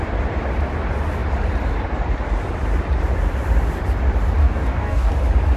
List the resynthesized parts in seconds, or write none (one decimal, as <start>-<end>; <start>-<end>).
4.4-5.1